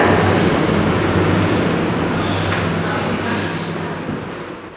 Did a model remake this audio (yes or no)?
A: no